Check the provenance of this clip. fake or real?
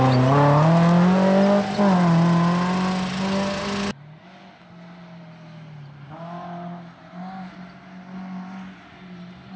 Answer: real